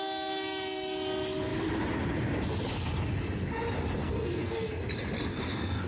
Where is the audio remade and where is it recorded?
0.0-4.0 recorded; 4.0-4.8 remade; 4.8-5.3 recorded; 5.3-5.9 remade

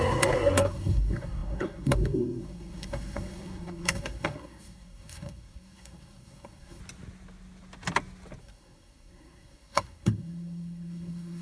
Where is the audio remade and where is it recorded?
0.0-6.8 remade; 6.8-8.4 recorded; 8.4-11.4 remade

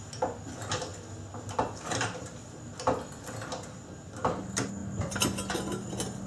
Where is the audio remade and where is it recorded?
0.0-6.3 recorded

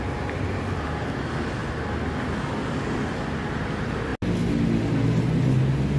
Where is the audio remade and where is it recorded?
0.0-6.0 recorded

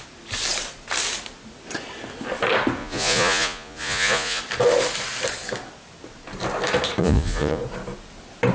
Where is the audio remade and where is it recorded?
0.0-2.8 recorded; 2.8-4.4 remade; 4.4-7.0 recorded; 7.0-7.6 remade; 7.6-8.5 recorded

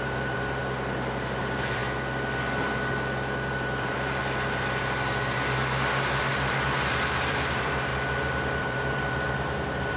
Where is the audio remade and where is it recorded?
0.0-0.6 remade; 0.6-1.4 recorded; 1.4-1.8 remade; 1.8-3.5 recorded; 3.5-4.2 remade; 4.2-6.2 recorded; 6.2-7.9 remade; 7.9-8.6 recorded; 8.6-10.0 remade

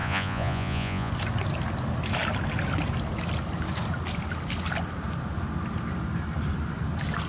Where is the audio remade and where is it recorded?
0.0-1.1 remade; 1.1-7.3 recorded